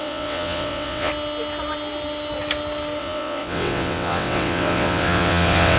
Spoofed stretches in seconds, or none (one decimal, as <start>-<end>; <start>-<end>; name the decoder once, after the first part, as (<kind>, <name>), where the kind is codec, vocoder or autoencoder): 0.0-1.1 (vocoder, WaveNeXt); 3.0-5.8